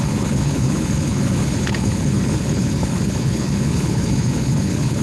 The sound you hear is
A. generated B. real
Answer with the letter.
A